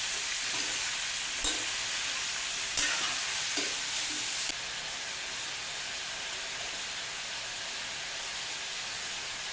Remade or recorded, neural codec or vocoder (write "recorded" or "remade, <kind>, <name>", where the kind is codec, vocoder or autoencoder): recorded